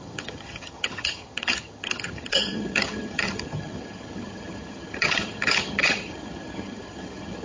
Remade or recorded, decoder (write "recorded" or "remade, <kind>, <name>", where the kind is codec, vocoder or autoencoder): remade, vocoder, HiFi-GAN